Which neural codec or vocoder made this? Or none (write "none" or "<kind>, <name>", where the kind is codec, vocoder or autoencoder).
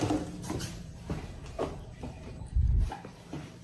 vocoder, BigVGAN v2